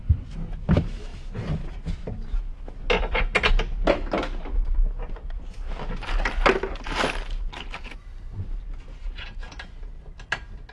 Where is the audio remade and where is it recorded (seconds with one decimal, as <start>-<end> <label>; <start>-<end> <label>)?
0.0-10.7 recorded